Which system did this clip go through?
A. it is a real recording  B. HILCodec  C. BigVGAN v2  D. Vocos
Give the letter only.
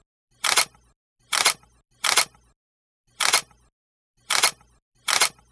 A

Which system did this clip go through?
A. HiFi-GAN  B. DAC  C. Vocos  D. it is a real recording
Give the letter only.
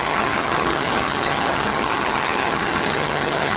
A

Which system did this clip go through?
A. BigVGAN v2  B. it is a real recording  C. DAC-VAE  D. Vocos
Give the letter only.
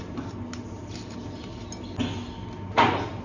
B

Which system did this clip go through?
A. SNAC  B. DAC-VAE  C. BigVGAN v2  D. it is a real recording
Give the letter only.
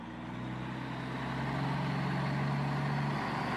D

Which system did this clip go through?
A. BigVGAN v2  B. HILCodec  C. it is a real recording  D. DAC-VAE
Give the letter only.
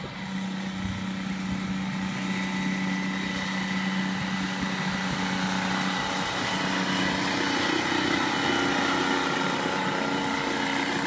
C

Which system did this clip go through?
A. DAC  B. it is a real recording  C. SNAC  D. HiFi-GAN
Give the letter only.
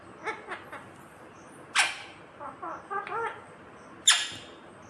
B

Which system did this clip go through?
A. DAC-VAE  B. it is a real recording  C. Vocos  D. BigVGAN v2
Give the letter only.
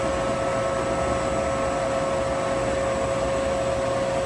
B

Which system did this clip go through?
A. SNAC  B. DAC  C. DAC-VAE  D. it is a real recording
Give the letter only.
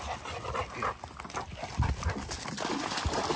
D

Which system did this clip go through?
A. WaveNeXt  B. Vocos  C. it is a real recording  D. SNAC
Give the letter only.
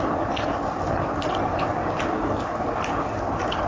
C